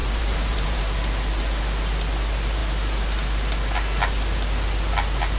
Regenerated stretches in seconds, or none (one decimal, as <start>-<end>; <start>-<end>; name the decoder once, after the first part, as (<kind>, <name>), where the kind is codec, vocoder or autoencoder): 0.0-0.8 (vocoder, BigVGAN v2)